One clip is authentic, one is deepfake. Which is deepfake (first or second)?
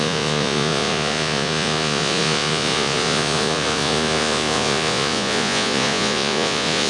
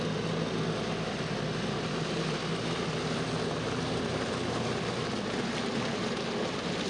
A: first